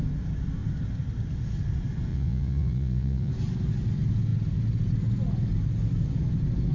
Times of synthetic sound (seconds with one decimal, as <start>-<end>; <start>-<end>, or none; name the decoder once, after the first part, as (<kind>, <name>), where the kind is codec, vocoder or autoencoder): 2.1-3.3 (vocoder, Vocos)